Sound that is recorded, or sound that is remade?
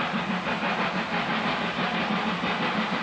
recorded